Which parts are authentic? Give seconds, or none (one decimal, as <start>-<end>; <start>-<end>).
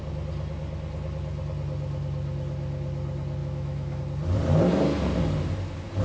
0.0-3.4; 4.0-6.0